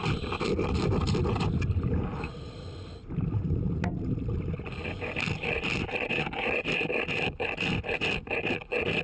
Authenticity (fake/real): real